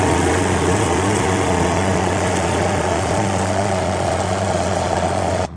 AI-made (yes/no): yes